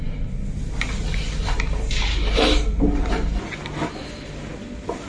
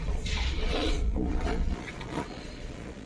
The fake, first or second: second